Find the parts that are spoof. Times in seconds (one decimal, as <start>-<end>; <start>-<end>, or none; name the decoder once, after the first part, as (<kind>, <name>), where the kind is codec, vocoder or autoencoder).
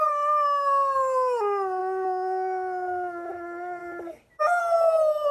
3.8-4.6 (vocoder, BigVGAN v2)